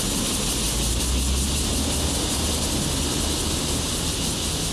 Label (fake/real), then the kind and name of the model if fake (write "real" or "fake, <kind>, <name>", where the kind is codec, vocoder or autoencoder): real